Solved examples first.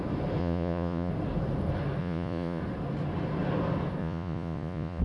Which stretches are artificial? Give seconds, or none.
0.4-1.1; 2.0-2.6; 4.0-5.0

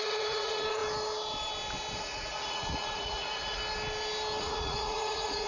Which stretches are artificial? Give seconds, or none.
0.0-0.8; 2.0-3.6; 4.4-5.5

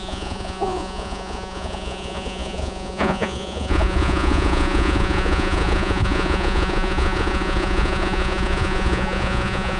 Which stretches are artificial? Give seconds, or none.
0.0-9.8

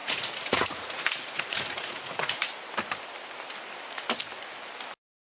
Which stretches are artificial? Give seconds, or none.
0.0-2.5

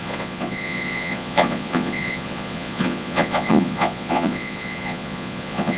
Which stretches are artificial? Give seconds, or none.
0.0-5.8

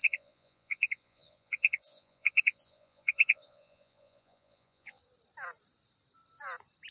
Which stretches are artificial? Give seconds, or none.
0.0-5.0

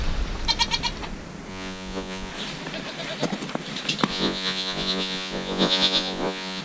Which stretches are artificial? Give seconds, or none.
1.5-2.3; 4.1-6.6

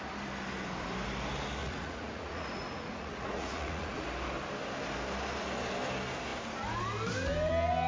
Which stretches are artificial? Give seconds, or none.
1.6-4.0